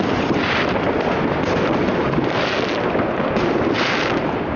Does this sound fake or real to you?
real